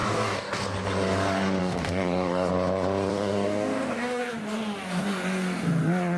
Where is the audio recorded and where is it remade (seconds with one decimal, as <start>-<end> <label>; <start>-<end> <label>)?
0.0-0.6 remade; 0.6-1.6 recorded; 1.6-2.5 remade; 2.5-3.1 recorded; 3.1-4.2 remade; 4.2-6.2 recorded